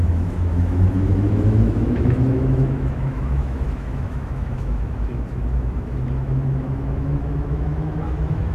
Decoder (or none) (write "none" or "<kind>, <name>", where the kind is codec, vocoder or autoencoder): autoencoder, DAC-VAE